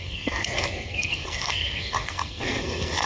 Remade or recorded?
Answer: remade